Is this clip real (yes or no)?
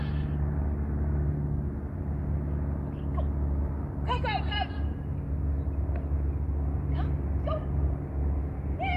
yes